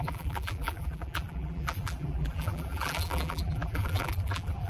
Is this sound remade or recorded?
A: remade